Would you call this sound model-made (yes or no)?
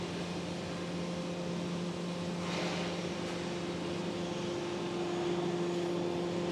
no